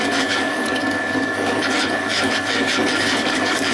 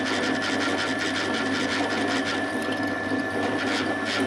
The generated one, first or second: first